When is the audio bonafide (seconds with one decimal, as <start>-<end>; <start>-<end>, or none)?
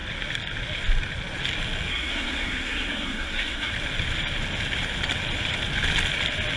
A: 0.0-1.9; 3.7-6.6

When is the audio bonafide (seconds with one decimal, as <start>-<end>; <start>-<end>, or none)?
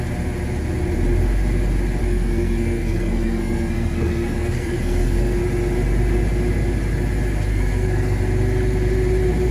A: 0.0-2.0; 5.4-7.5; 8.2-9.5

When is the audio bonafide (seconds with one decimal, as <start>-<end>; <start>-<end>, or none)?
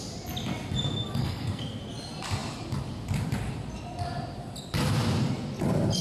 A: 0.0-1.2; 1.8-6.0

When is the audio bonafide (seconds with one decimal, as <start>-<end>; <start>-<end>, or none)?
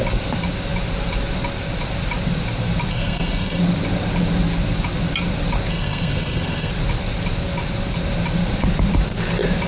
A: 0.0-2.9; 3.6-5.7; 6.7-9.7